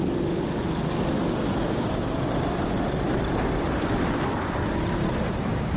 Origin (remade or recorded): remade